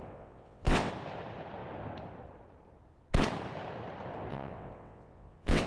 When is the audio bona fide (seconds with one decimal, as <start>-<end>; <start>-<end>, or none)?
0.9-4.3

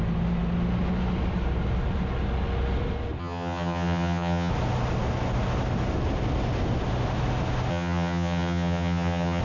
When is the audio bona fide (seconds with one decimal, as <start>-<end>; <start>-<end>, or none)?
0.0-3.2; 4.5-7.7

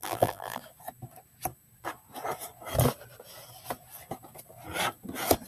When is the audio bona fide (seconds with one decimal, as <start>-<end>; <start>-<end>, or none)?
0.6-5.5

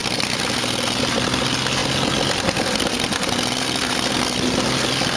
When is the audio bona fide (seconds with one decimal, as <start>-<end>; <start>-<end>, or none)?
0.0-5.2

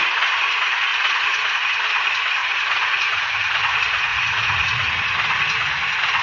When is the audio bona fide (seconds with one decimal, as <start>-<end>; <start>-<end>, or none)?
0.0-0.9; 1.6-2.4; 3.6-4.1; 4.9-6.2

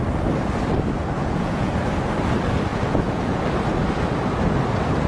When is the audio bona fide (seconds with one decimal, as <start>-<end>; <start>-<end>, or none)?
0.0-1.2; 1.7-2.7; 3.4-5.1

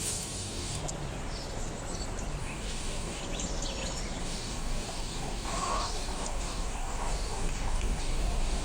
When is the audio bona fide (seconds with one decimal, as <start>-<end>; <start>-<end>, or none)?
0.8-2.4; 3.2-4.2